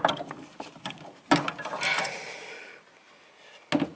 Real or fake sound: real